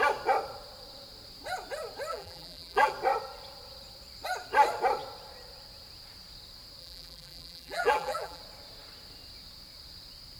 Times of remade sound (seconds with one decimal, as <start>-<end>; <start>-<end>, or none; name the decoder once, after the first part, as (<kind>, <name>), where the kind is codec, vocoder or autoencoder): 2.1-2.9 (vocoder, BigVGAN v2); 6.8-8.4